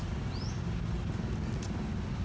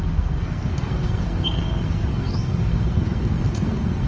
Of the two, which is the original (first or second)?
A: first